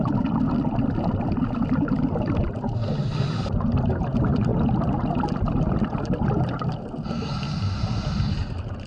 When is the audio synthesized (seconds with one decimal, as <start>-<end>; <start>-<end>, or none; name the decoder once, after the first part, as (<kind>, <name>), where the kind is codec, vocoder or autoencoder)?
none